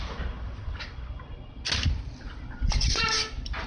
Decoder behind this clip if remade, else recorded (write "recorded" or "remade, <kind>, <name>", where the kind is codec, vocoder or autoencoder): recorded